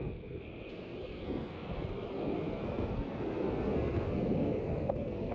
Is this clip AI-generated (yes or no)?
yes